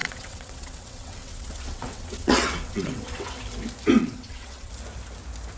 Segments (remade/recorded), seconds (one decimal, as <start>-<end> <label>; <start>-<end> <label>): 0.0-3.4 remade; 3.4-4.0 recorded; 4.0-4.7 remade; 4.7-5.6 recorded